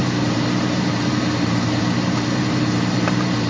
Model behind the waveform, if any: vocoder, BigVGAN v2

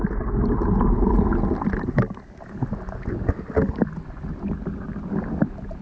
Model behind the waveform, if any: none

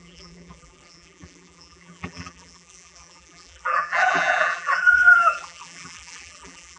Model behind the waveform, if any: vocoder, BigVGAN v2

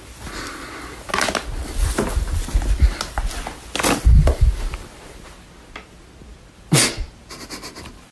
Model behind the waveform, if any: none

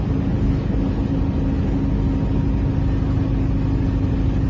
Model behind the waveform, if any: none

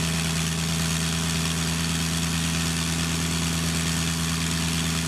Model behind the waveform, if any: none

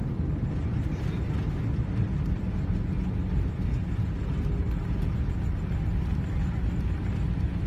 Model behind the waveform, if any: none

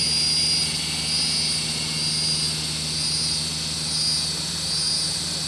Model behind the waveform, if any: none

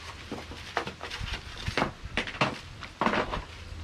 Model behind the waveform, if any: vocoder, BigVGAN v2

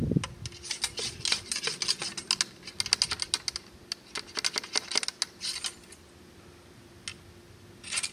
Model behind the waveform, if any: none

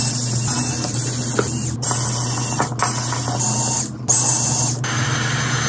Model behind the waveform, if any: none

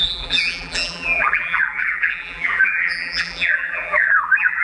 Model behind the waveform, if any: vocoder, BigVGAN v2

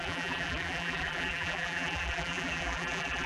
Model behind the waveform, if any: vocoder, BigVGAN v2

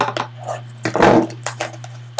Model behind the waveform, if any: none